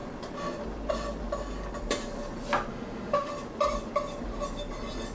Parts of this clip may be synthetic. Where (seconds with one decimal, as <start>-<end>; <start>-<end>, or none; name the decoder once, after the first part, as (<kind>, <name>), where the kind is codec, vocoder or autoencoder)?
2.7-3.3 (autoencoder, DAC-VAE)

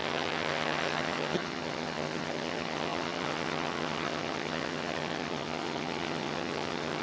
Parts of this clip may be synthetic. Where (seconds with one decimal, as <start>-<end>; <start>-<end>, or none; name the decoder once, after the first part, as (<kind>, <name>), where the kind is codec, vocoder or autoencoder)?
0.0-7.0 (vocoder, HiFi-GAN)

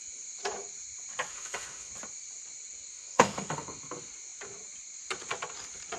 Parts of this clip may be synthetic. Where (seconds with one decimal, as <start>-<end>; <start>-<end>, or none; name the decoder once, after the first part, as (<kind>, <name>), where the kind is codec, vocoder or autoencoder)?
1.3-1.9 (autoencoder, DAC-VAE); 2.9-3.8

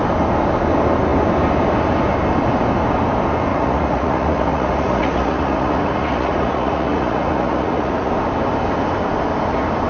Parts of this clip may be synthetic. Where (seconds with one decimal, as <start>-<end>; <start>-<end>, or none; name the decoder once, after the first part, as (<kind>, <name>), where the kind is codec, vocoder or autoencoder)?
3.5-8.1 (vocoder, Vocos)

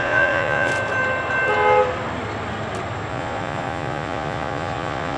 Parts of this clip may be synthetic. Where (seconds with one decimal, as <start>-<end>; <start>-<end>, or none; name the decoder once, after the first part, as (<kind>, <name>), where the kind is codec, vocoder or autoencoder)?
0.0-0.7 (vocoder, Vocos); 3.1-5.2

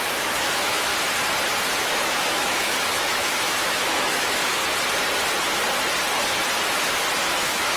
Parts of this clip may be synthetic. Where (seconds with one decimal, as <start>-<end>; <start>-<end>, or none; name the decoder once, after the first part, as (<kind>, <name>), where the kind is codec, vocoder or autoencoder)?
0.0-0.9 (autoencoder, DAC-VAE); 1.8-4.6; 7.2-7.8

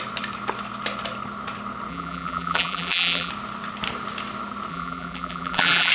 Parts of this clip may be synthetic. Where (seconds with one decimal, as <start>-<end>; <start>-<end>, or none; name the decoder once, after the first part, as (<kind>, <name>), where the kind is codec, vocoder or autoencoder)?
1.9-3.3 (vocoder, BigVGAN v2); 4.7-5.9